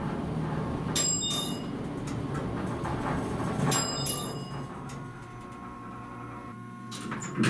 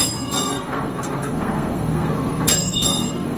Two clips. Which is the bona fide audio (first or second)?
first